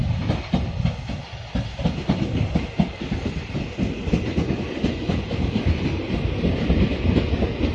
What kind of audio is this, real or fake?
real